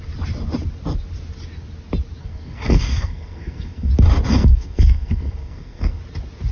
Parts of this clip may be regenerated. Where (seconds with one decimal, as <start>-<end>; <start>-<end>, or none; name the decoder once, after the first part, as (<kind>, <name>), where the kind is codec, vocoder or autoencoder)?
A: 2.2-3.9 (codec, SNAC); 4.3-6.0